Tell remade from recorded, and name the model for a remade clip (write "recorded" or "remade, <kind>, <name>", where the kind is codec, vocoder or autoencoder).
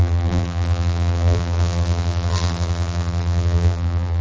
remade, vocoder, BigVGAN v2